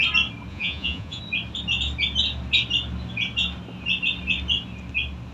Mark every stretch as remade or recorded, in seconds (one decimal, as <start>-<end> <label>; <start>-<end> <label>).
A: 0.0-0.5 recorded; 0.5-1.2 remade; 1.2-5.3 recorded